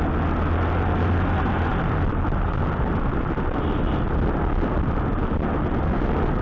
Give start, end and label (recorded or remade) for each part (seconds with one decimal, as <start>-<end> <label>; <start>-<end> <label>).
0.0-6.4 recorded